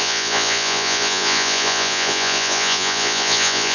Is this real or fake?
fake